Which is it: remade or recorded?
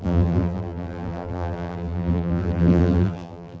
remade